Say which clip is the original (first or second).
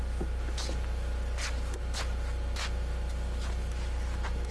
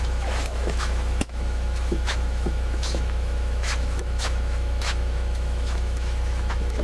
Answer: first